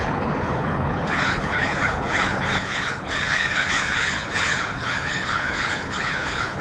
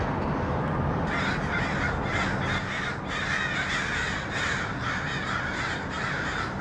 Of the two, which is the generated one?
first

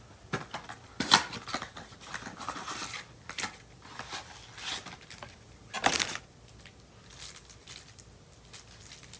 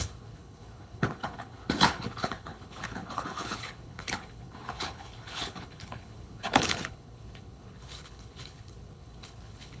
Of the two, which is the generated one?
second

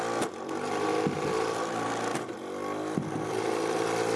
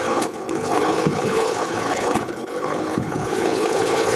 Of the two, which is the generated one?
second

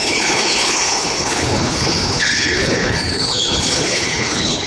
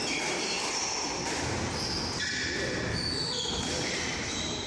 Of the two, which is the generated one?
first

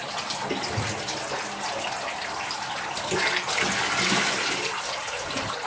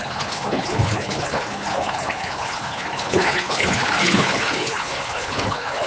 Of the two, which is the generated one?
second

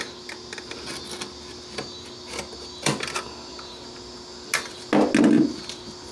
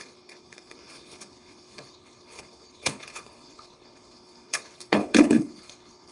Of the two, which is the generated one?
second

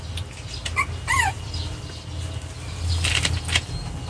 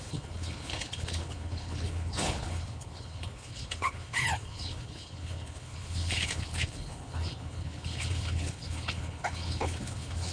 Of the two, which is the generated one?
second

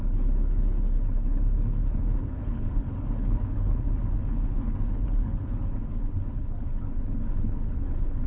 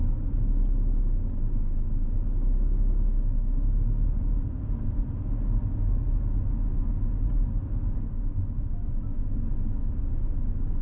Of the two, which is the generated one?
first